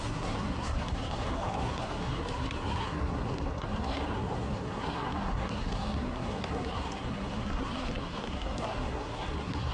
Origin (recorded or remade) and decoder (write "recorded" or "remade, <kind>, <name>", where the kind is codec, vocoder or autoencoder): remade, codec, SNAC